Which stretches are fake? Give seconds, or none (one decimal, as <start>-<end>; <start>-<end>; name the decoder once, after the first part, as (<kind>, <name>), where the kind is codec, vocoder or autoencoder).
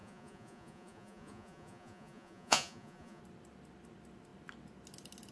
0.0-3.2 (vocoder, Vocos)